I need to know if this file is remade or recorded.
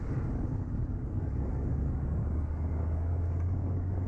remade